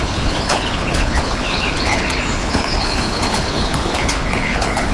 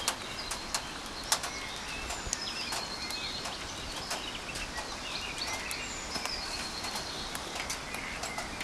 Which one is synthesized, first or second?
first